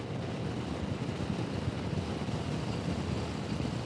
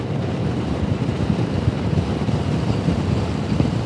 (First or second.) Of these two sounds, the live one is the first